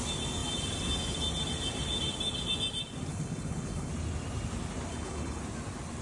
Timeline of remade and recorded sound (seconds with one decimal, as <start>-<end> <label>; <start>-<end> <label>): 0.0-3.1 recorded; 3.1-3.9 remade; 3.9-4.9 recorded; 4.9-5.4 remade; 5.4-6.0 recorded